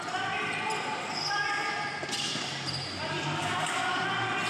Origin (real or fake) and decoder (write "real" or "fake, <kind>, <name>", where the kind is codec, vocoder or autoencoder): real